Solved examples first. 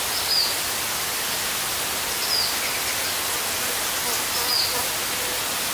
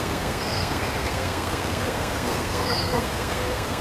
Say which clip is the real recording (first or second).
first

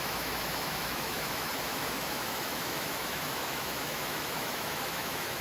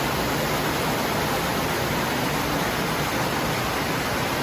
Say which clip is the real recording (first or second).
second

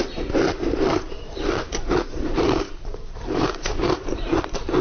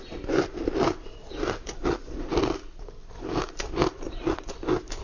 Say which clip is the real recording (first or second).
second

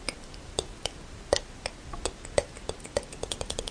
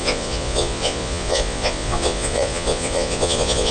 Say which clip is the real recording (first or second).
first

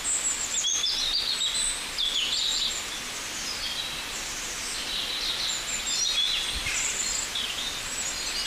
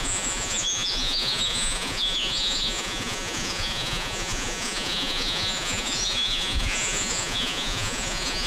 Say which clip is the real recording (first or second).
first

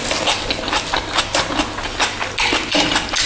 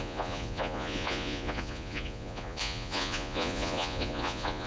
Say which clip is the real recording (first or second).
first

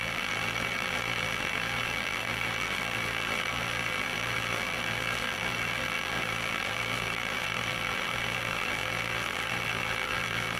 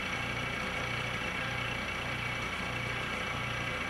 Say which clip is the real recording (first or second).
second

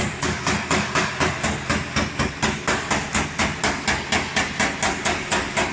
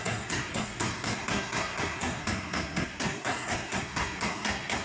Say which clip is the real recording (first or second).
first